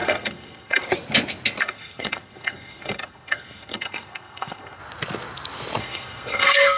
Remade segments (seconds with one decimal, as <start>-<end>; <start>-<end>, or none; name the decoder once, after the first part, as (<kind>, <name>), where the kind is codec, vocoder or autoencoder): 0.0-0.9 (codec, SNAC); 1.6-4.8; 5.8-6.8